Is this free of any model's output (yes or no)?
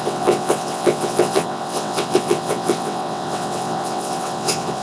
no